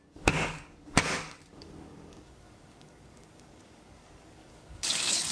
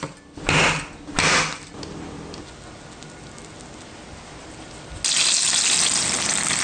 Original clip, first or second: second